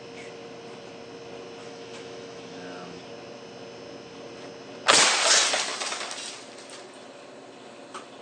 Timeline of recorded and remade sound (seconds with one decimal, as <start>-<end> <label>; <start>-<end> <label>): 0.0-1.6 recorded; 1.6-3.0 remade; 3.0-8.2 recorded